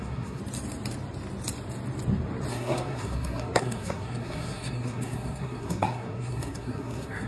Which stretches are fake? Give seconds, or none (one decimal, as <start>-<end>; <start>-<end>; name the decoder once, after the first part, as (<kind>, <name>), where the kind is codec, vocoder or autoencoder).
0.0-0.4 (codec, SNAC); 2.5-7.3